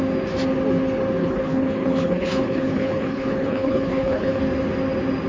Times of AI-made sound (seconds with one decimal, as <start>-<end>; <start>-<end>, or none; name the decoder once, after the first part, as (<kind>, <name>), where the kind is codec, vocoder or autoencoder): 1.2-4.4 (codec, HILCodec)